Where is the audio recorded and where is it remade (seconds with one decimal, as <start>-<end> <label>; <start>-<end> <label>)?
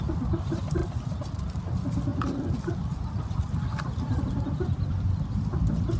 0.0-0.8 remade; 0.8-1.4 recorded; 1.4-6.0 remade